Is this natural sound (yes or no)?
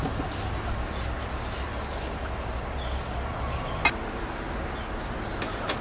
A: yes